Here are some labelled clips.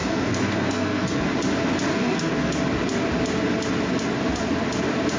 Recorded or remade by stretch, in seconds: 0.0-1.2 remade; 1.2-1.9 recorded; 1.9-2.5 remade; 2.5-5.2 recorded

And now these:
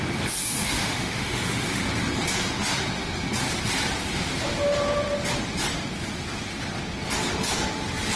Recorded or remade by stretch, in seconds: 0.0-0.4 recorded; 0.4-1.8 remade; 1.8-8.2 recorded

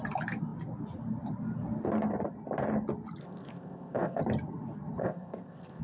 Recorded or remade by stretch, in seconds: 0.0-3.2 recorded; 3.2-4.2 remade; 4.2-5.0 recorded; 5.0-5.8 remade

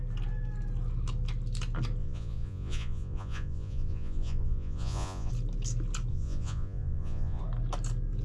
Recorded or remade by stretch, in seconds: 0.0-2.0 recorded; 2.0-5.3 remade; 5.3-6.1 recorded; 6.1-7.4 remade; 7.4-8.2 recorded